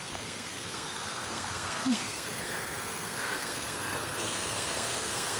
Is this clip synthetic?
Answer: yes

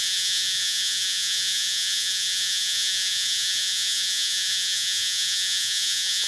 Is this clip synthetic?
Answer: yes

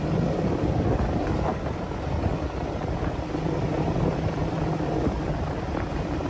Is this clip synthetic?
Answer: yes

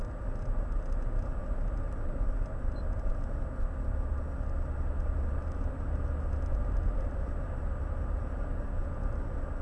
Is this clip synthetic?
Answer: no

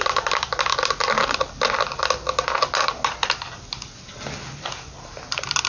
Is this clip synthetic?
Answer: no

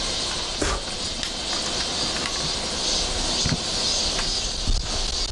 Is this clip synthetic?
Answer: no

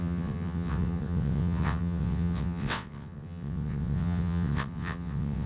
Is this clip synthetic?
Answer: yes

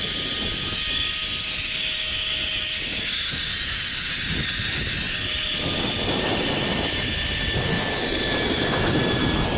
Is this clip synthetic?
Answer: no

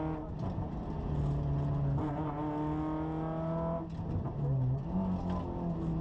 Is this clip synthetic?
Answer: no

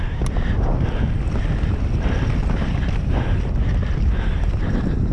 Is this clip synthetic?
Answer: no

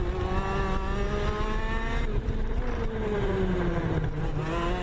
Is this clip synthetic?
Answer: no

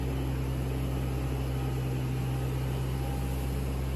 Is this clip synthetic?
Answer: no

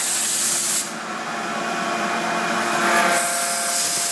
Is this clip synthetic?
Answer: no